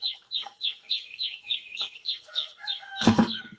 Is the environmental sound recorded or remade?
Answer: remade